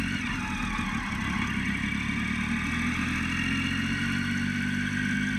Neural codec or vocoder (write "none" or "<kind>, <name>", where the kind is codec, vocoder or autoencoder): none